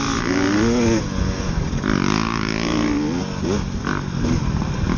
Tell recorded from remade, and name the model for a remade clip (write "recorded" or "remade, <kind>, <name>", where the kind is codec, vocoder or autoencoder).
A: recorded